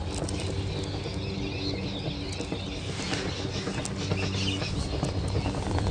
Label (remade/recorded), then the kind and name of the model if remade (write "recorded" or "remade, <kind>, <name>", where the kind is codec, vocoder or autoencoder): recorded